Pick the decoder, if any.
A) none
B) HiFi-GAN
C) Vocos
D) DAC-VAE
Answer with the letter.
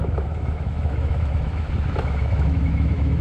D